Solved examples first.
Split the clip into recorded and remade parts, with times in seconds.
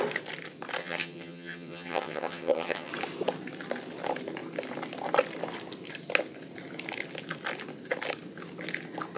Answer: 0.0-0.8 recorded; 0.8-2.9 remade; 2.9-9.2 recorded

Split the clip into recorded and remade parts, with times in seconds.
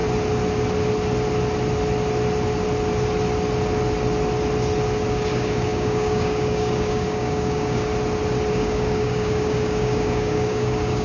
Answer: 0.0-5.1 recorded; 5.1-7.9 remade; 7.9-8.5 recorded; 8.5-11.0 remade